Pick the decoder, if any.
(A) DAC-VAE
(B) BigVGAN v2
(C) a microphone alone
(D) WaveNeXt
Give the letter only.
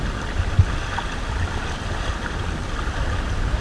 C